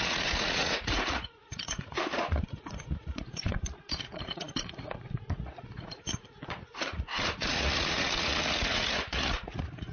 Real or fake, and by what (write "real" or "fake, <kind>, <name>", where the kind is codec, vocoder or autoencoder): fake, vocoder, Vocos